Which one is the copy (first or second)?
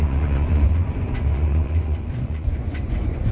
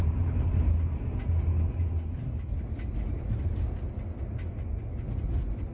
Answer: first